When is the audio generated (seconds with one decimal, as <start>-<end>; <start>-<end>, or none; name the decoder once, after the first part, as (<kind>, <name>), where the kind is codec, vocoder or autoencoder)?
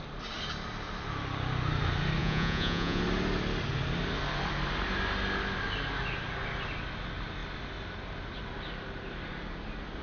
2.2-3.0 (vocoder, Vocos)